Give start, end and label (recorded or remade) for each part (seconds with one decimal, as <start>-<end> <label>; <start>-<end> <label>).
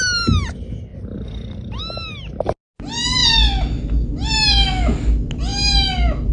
0.0-6.3 recorded